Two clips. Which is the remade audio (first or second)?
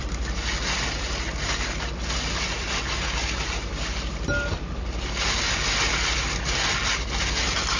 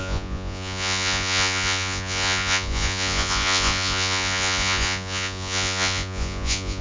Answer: second